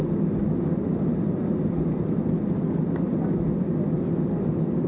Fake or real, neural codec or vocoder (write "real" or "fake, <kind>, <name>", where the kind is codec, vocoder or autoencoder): real